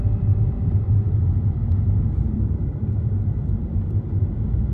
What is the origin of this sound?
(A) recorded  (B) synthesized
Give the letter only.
B